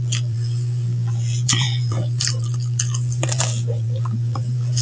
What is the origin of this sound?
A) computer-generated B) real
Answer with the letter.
A